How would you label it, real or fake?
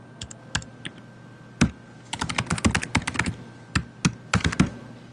real